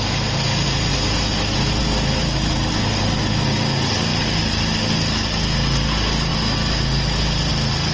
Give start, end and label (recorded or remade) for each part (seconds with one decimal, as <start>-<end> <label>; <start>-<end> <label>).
0.0-7.9 recorded